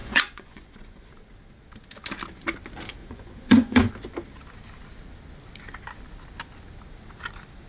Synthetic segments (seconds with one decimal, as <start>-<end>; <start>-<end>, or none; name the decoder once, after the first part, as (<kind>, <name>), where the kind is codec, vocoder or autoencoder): 0.0-1.1 (vocoder, Vocos); 3.0-3.9